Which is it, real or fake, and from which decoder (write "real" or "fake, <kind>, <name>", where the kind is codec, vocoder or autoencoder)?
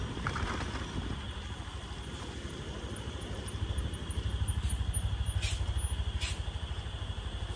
real